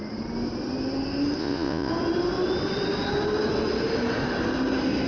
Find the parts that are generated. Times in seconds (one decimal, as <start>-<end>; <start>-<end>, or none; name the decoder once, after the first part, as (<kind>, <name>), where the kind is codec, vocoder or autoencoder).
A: 1.4-1.9 (vocoder, Vocos)